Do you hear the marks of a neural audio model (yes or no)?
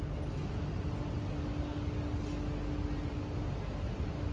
no